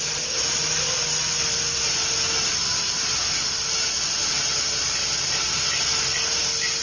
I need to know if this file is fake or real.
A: real